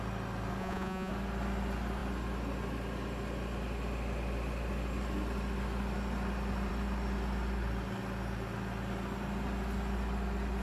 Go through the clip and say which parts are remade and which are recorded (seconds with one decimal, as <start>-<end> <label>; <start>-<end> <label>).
0.0-0.6 recorded; 0.6-1.1 remade; 1.1-10.6 recorded